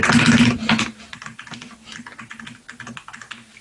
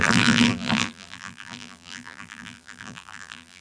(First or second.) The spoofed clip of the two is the second